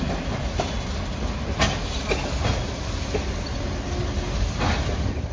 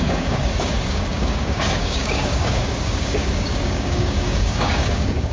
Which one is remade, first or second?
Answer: second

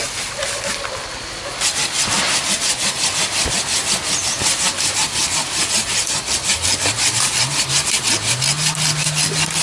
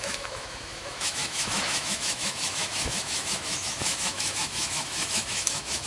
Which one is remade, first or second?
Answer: second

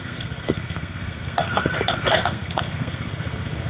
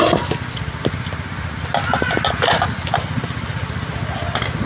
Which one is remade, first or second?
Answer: first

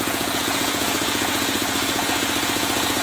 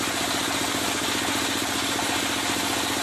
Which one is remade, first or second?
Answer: first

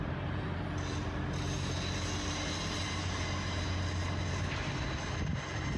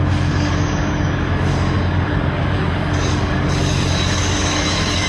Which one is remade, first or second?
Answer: second